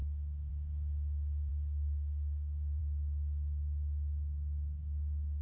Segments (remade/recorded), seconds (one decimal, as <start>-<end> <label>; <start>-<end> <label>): 0.0-0.5 remade; 0.5-1.5 recorded; 1.5-2.8 remade; 2.8-5.4 recorded